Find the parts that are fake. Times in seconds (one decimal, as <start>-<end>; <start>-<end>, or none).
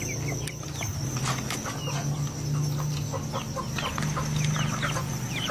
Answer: none